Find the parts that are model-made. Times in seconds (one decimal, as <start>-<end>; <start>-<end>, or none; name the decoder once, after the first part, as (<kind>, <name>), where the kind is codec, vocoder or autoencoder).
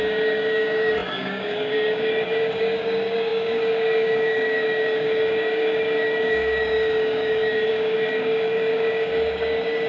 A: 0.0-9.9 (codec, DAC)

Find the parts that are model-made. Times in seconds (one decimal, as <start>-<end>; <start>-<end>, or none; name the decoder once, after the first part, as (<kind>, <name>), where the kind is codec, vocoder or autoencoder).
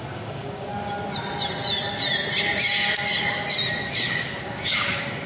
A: 0.0-0.7 (codec, DAC); 3.9-5.3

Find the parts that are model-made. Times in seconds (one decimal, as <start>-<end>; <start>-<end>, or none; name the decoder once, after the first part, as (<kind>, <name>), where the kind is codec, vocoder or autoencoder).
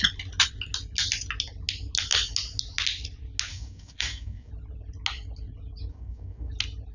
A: 3.5-4.5 (codec, DAC); 5.9-6.5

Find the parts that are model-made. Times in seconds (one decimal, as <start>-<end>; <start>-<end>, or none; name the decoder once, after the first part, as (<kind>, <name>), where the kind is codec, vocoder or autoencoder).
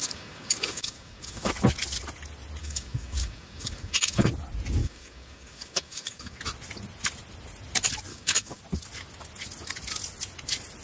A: 0.0-1.5 (codec, DAC); 2.6-4.3; 4.8-6.4; 8.1-8.6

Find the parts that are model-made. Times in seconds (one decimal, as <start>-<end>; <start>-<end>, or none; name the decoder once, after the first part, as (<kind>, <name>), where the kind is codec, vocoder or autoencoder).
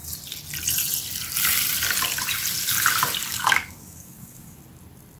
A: 3.3-4.6 (codec, DAC)